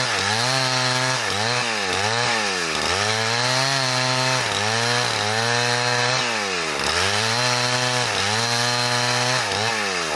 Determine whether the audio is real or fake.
real